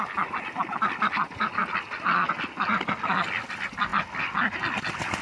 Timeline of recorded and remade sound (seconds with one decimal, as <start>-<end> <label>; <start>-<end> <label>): 0.0-5.2 recorded